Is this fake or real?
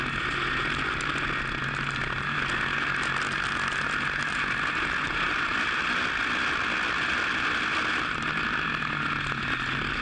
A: real